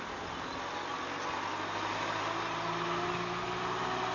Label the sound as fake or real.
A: real